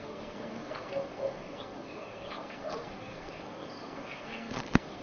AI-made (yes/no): yes